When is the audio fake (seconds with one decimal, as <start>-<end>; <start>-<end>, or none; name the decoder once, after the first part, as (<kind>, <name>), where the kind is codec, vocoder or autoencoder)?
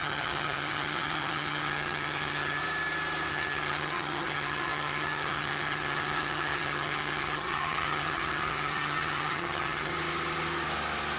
0.0-2.6 (vocoder, HiFi-GAN); 3.3-9.9